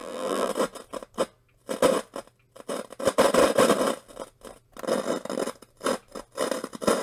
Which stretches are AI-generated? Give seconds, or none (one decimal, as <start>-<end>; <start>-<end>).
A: 0.0-0.5